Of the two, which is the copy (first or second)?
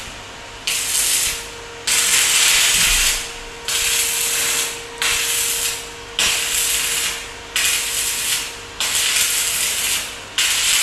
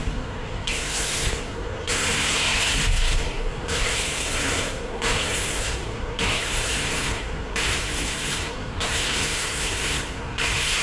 second